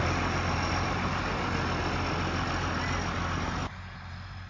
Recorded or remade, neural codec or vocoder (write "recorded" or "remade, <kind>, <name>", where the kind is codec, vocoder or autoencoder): recorded